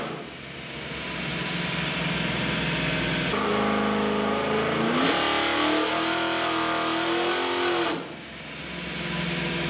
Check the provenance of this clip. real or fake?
real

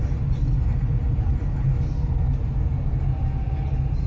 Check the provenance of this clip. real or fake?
real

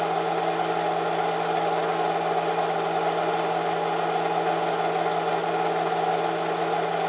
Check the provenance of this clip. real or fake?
real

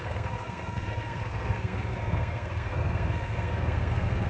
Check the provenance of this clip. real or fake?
fake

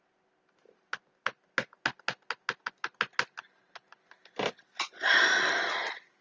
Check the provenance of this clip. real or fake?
real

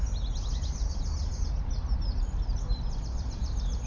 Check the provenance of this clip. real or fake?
real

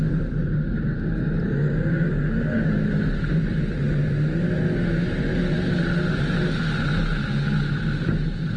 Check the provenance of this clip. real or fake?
real